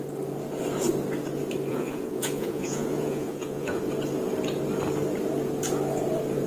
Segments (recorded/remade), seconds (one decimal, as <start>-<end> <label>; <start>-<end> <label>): 0.0-1.7 recorded; 1.7-3.8 remade; 3.8-6.5 recorded